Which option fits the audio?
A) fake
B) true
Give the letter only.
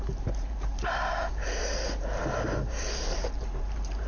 A